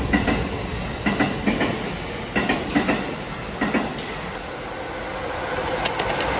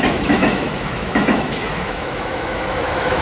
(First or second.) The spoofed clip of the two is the second